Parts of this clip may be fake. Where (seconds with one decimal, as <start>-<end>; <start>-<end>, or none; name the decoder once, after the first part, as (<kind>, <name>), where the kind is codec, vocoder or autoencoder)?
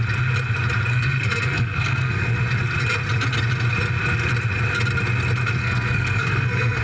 0.9-2.3 (codec, SNAC); 5.6-6.8